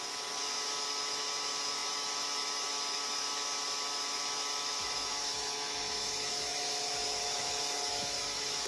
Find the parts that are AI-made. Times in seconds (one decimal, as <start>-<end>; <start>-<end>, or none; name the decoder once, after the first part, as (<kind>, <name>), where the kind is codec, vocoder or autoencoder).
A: 0.0-8.7 (autoencoder, DAC-VAE)